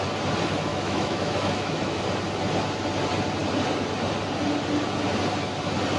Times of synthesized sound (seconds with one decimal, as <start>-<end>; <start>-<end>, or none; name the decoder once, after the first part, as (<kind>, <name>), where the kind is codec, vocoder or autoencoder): 0.7-2.0 (autoencoder, DAC-VAE)